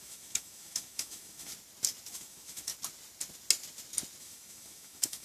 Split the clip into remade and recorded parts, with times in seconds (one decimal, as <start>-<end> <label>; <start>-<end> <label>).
0.0-1.5 remade; 1.5-2.1 recorded; 2.1-2.7 remade; 2.7-4.2 recorded; 4.2-5.2 remade